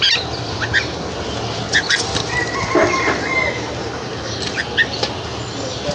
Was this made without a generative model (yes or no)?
yes